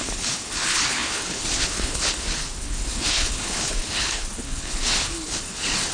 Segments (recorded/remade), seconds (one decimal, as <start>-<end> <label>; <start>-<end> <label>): 0.0-5.9 remade